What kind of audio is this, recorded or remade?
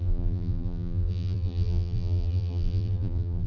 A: remade